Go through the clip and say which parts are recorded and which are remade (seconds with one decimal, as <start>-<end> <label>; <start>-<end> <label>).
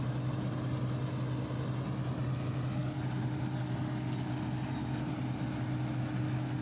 0.0-6.6 recorded